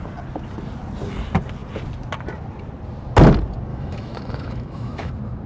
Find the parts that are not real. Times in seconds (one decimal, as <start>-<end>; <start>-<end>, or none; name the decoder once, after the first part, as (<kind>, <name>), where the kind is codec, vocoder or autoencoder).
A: 3.7-5.1 (autoencoder, DAC-VAE)